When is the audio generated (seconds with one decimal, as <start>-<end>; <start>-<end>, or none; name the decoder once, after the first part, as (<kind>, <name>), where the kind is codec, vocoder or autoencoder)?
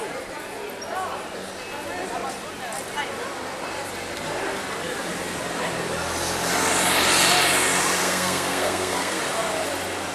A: 8.0-9.2 (codec, SNAC)